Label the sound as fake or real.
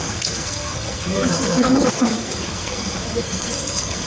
fake